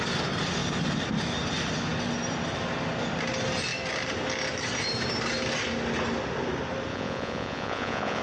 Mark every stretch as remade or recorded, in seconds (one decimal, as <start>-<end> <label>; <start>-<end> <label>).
0.0-6.9 recorded; 6.9-8.2 remade